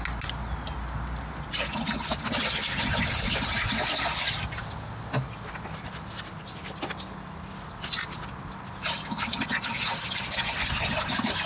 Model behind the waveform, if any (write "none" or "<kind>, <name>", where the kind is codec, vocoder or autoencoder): none